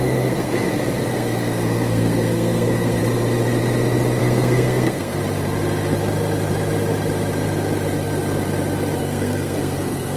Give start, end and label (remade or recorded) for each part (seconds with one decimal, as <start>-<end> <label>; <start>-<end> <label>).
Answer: 0.0-0.5 remade; 0.5-1.1 recorded; 1.1-3.0 remade; 3.0-4.2 recorded; 4.2-5.2 remade; 5.2-9.0 recorded; 9.0-10.2 remade